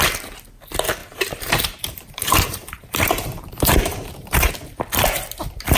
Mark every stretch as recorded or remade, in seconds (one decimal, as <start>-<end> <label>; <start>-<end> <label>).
0.0-1.0 recorded; 1.0-4.5 remade; 4.5-5.8 recorded